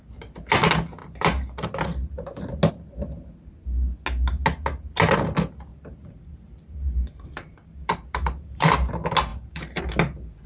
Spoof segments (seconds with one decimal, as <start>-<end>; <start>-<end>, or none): 5.7-8.9; 9.3-9.8